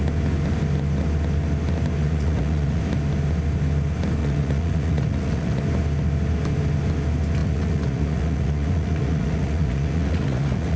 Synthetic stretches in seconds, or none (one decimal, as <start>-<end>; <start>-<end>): 2.0-2.8; 4.2-5.6; 7.4-10.8